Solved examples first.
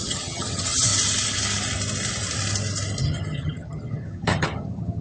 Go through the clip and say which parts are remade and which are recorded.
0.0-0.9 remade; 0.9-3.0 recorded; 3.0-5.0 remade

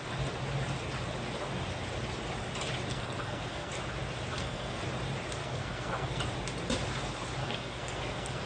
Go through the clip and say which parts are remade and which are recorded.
0.0-2.9 recorded; 2.9-3.7 remade; 3.7-4.3 recorded; 4.3-4.8 remade; 4.8-5.4 recorded; 5.4-6.2 remade; 6.2-7.4 recorded; 7.4-8.5 remade

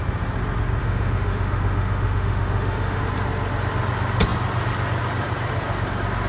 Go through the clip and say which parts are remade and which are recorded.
0.0-0.8 recorded; 0.8-3.0 remade; 3.0-6.3 recorded

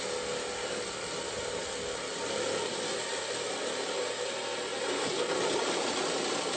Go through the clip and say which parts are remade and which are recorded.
0.0-4.7 recorded; 4.7-5.3 remade; 5.3-6.6 recorded

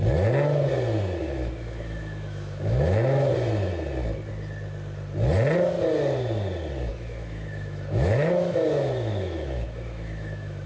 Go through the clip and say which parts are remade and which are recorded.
0.0-1.2 recorded; 1.2-3.3 remade; 3.3-6.9 recorded; 6.9-10.7 remade

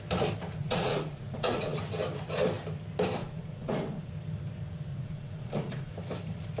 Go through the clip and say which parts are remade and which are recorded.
0.0-0.6 recorded; 0.6-1.8 remade; 1.8-3.2 recorded; 3.2-4.1 remade; 4.1-4.9 recorded; 4.9-5.9 remade; 5.9-6.6 recorded

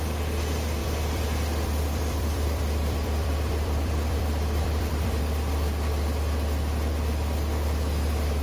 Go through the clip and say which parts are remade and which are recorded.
0.0-0.8 recorded; 0.8-5.2 remade; 5.2-8.4 recorded

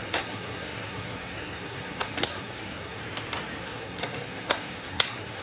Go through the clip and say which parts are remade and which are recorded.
0.0-3.0 remade; 3.0-3.6 recorded; 3.6-5.4 remade